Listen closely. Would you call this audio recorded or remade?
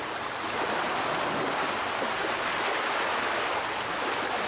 recorded